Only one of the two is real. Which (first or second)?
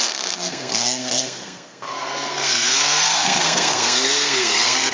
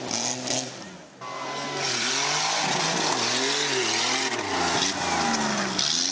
second